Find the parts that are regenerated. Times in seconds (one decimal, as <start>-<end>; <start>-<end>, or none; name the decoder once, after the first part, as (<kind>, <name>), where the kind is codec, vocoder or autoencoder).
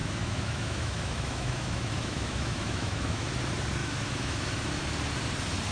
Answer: 0.0-3.3 (autoencoder, DAC-VAE); 3.8-4.5